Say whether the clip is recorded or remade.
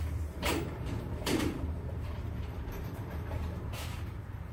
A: remade